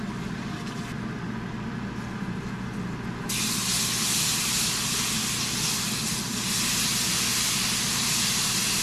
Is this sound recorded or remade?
recorded